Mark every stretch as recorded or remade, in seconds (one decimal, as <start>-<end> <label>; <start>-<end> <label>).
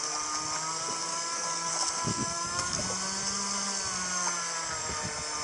0.0-1.1 recorded; 1.1-1.7 remade; 1.7-2.1 recorded; 2.1-2.8 remade; 2.8-5.4 recorded